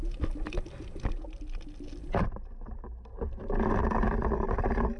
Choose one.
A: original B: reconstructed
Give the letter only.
A